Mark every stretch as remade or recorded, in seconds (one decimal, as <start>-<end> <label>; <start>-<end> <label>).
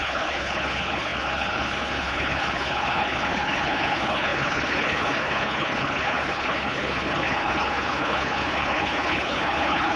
0.0-10.0 remade